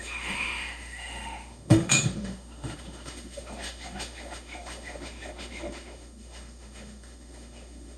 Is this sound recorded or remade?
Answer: remade